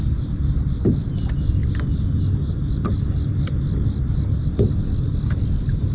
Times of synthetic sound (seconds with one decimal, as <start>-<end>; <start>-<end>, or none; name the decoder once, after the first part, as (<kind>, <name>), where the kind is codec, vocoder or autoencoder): none